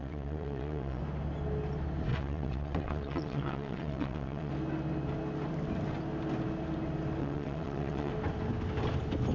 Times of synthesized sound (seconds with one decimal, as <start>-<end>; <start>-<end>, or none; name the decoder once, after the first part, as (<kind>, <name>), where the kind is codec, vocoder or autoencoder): 0.0-1.0 (vocoder, WaveNeXt); 2.1-4.5; 7.2-8.1